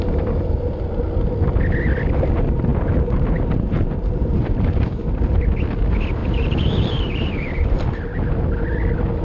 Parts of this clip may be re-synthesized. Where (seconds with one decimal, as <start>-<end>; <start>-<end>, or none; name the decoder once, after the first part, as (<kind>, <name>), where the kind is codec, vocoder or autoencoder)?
2.7-5.0 (vocoder, BigVGAN v2); 6.2-8.0